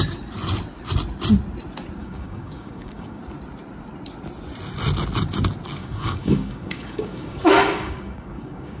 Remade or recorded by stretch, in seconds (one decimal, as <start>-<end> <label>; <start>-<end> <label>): 0.0-2.0 recorded; 2.0-3.2 remade; 3.2-5.8 recorded; 5.8-8.8 remade